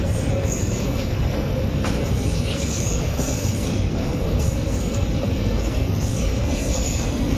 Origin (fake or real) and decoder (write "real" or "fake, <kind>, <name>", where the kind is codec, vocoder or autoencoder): fake, codec, SNAC